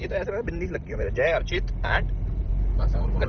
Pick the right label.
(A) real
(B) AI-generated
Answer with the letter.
A